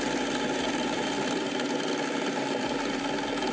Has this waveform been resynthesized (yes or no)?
yes